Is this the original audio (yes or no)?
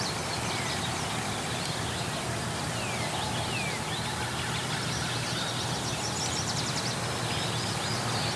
yes